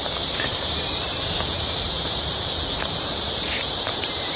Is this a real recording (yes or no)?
no